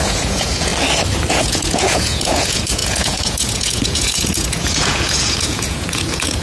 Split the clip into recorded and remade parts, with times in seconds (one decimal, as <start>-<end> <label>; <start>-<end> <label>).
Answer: 0.0-0.7 remade; 0.7-1.3 recorded; 1.3-6.4 remade